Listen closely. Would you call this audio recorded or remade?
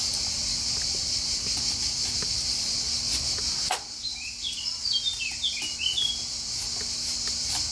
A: recorded